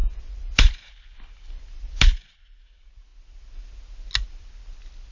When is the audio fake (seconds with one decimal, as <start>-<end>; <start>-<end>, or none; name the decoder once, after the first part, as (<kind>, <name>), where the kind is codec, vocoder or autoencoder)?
none